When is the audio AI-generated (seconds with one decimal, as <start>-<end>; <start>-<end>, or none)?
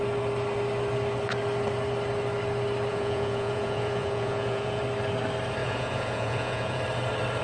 2.9-4.8; 5.6-6.8